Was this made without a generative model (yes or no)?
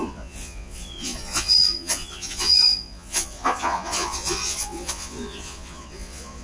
no